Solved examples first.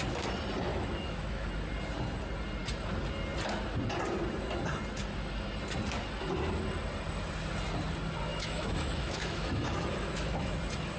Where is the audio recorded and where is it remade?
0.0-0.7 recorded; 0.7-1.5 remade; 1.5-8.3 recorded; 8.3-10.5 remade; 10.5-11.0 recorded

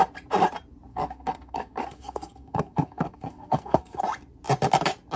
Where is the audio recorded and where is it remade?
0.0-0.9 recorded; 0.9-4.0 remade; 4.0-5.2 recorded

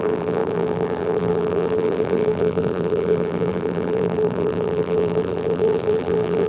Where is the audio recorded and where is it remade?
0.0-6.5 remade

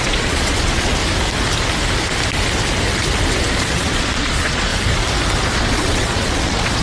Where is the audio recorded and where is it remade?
0.0-0.9 remade; 0.9-3.6 recorded; 3.6-4.7 remade; 4.7-5.5 recorded; 5.5-6.8 remade